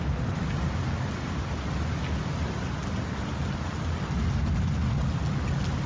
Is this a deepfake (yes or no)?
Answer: no